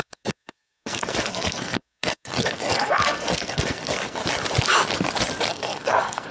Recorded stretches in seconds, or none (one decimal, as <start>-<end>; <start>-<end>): 4.2-5.5